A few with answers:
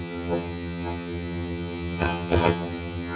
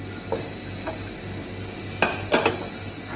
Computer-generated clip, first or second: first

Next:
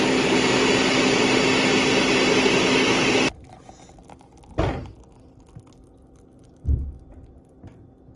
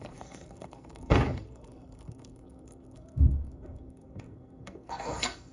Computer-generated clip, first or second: second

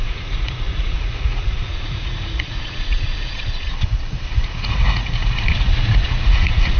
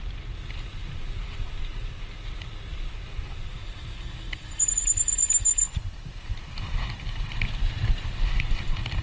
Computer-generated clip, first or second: first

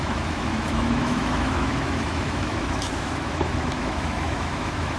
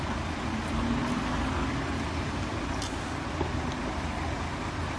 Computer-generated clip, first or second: first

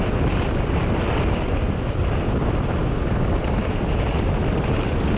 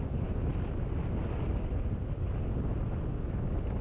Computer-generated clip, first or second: first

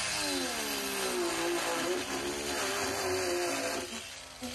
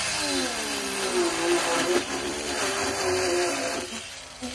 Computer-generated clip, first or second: second